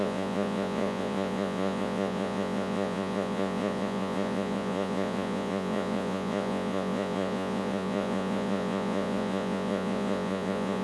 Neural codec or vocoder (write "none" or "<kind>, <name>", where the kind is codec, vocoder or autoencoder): vocoder, Vocos